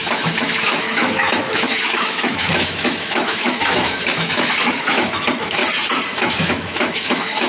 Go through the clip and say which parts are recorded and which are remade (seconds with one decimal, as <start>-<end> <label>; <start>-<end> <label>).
0.0-5.6 remade; 5.6-6.3 recorded; 6.3-7.5 remade